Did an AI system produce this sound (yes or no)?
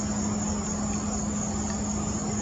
no